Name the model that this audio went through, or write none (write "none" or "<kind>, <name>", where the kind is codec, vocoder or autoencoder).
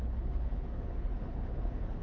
codec, HILCodec